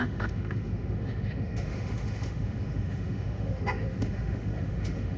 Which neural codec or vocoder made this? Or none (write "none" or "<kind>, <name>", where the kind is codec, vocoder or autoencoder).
autoencoder, DAC-VAE